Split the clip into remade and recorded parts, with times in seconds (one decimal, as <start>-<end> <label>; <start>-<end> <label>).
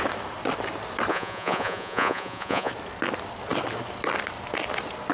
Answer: 0.0-1.1 recorded; 1.1-2.7 remade; 2.7-5.1 recorded